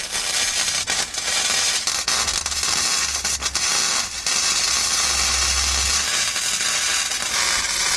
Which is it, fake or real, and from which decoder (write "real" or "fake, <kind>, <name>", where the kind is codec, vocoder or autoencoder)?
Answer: real